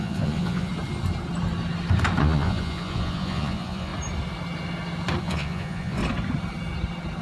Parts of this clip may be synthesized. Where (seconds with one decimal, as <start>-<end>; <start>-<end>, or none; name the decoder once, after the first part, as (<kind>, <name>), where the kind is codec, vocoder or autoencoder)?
0.0-0.7 (vocoder, Vocos); 2.2-3.9; 5.2-6.0